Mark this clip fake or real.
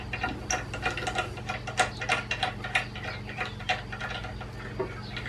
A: real